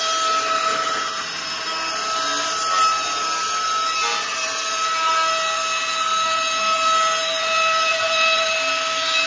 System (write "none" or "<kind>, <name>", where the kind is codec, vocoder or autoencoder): none